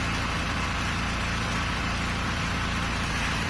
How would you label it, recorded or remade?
recorded